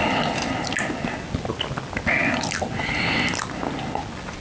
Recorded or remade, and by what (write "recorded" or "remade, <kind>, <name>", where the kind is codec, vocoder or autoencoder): recorded